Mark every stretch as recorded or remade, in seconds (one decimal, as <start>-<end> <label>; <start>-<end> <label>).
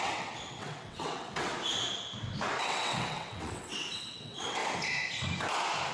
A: 0.0-1.5 remade; 1.5-2.6 recorded; 2.6-4.6 remade; 4.6-5.9 recorded